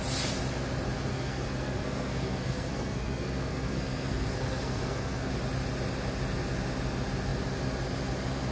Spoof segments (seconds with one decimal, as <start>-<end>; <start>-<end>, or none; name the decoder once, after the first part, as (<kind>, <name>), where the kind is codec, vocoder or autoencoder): 1.1-5.3 (codec, SNAC)